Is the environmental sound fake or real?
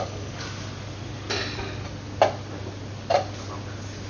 real